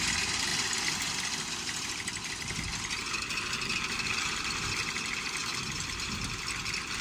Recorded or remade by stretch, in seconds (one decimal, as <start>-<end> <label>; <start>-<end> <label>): 0.0-5.4 recorded; 5.4-7.0 remade

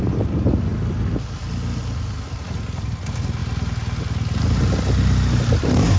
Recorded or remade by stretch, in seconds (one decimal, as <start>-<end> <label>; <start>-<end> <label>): 0.0-6.0 recorded

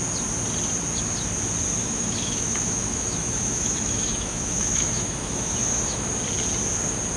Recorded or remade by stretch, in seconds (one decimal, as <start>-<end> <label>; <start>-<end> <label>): 0.0-1.8 recorded; 1.8-6.1 remade; 6.1-7.2 recorded

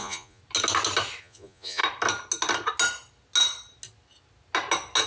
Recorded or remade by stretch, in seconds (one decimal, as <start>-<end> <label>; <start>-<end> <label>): 0.0-0.4 remade; 0.4-1.2 recorded; 1.2-1.8 remade; 1.8-5.1 recorded

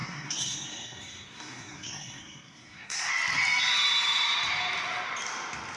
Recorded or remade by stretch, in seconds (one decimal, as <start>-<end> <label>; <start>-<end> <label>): 0.0-3.1 remade; 3.1-5.8 recorded

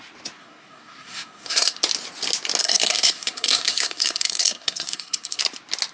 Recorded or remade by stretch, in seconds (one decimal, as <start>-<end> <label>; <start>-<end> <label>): 0.0-0.4 recorded; 0.4-1.8 remade; 1.8-2.6 recorded; 2.6-5.4 remade; 5.4-5.9 recorded

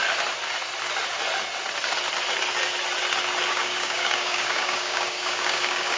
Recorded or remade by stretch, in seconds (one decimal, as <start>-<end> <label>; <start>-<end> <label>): 0.0-3.5 recorded; 3.5-6.0 remade

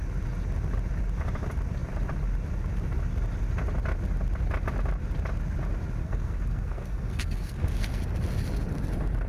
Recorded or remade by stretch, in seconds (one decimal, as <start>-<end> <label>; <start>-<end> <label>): 0.0-6.0 recorded; 6.0-8.0 remade; 8.0-9.3 recorded